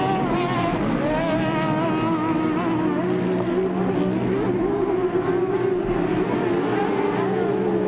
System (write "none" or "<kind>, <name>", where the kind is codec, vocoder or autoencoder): none